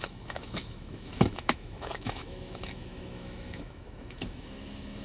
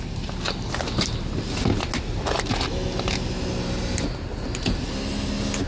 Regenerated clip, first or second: first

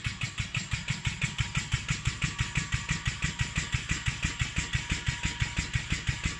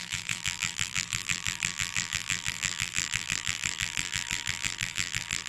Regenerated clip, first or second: second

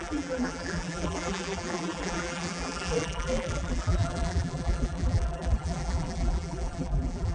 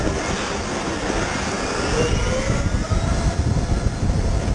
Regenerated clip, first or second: first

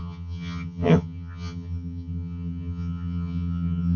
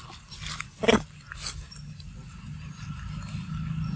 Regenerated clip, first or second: first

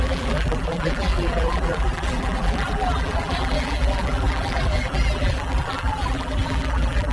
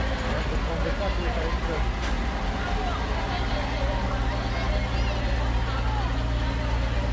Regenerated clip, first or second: first